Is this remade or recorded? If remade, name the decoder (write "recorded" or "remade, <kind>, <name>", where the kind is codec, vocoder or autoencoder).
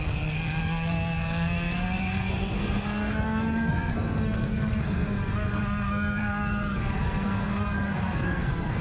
remade, codec, SNAC